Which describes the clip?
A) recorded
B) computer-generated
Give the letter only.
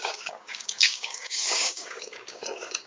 B